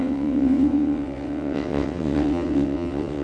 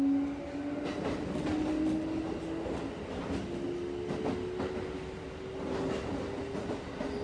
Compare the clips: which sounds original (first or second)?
second